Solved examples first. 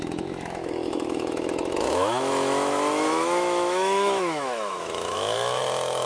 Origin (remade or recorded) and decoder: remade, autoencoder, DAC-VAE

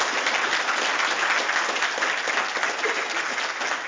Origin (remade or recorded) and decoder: recorded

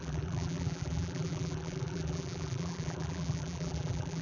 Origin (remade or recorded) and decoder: remade, vocoder, BigVGAN v2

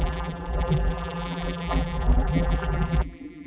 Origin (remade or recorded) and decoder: remade, vocoder, BigVGAN v2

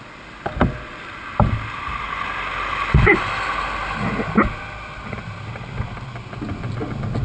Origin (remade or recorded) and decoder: recorded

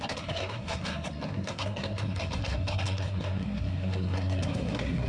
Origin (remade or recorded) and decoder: remade, codec, SNAC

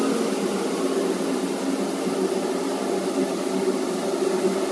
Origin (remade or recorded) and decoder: recorded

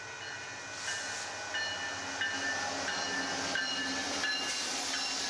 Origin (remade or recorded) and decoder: recorded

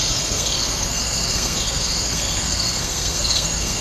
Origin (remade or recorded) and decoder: remade, codec, SNAC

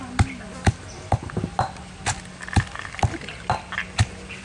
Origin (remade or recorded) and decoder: recorded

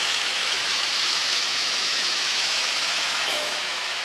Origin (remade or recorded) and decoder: remade, autoencoder, DAC-VAE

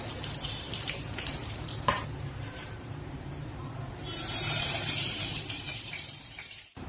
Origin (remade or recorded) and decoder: remade, vocoder, BigVGAN v2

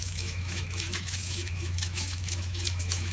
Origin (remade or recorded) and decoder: remade, autoencoder, DAC-VAE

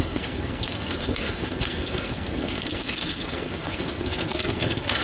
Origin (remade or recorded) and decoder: remade, codec, SNAC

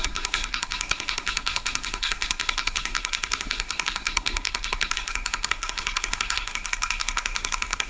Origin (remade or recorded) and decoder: remade, codec, SNAC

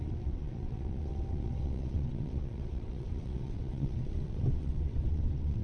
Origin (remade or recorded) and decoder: remade, vocoder, WaveNeXt